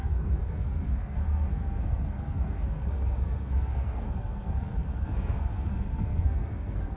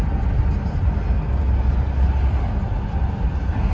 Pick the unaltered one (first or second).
second